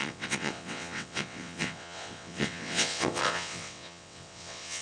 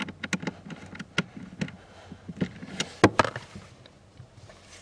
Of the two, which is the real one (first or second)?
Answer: second